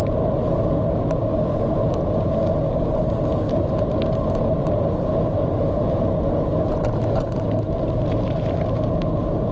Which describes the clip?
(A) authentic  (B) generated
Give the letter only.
A